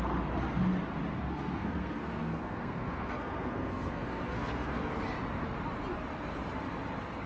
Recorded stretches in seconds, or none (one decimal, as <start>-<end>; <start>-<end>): 0.0-1.2; 4.9-7.3